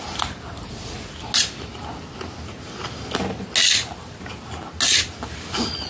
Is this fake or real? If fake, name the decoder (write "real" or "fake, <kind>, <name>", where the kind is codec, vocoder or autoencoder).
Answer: real